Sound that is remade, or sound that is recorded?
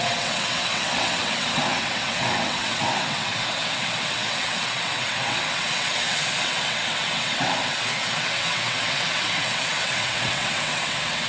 remade